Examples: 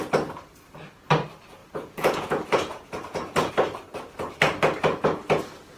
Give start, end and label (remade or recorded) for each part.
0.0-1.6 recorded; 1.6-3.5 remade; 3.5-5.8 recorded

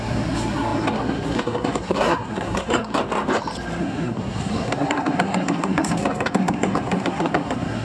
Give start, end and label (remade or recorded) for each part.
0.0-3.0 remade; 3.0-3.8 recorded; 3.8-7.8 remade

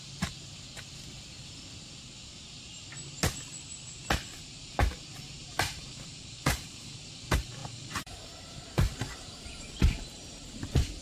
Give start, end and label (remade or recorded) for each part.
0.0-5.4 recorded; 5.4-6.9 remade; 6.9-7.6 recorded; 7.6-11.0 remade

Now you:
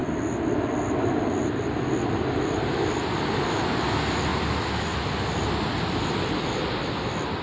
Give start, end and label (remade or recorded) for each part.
0.0-3.7 remade; 3.7-4.3 recorded; 4.3-6.1 remade; 6.1-7.4 recorded

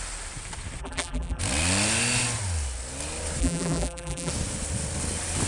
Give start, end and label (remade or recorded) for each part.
0.0-0.8 recorded; 0.8-1.4 remade; 1.4-3.4 recorded; 3.4-4.3 remade; 4.3-5.5 recorded